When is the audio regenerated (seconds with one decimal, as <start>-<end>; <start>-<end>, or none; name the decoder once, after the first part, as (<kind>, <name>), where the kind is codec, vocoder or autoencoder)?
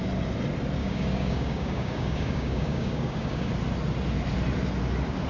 0.8-3.5 (codec, DAC)